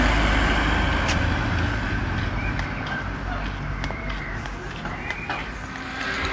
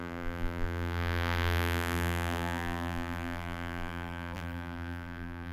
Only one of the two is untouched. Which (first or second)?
first